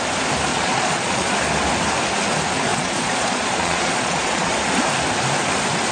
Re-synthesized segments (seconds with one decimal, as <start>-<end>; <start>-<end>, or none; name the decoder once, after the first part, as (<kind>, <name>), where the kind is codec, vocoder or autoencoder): 0.5-1.3 (vocoder, Vocos); 2.7-4.5